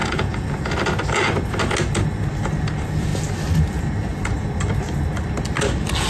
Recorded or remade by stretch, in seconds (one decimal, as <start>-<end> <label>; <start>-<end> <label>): 0.0-0.7 remade; 0.7-6.1 recorded